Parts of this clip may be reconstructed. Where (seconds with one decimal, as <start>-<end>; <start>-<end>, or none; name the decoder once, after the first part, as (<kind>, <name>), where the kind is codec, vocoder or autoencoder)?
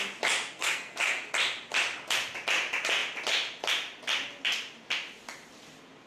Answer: 0.4-1.2 (codec, SNAC)